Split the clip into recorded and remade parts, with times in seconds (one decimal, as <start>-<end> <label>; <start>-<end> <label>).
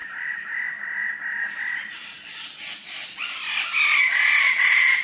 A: 0.0-0.6 remade; 0.6-5.0 recorded